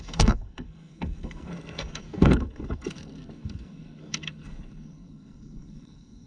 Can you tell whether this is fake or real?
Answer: fake